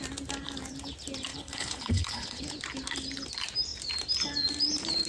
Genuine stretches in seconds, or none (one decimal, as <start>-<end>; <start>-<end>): 0.0-1.3; 2.4-5.1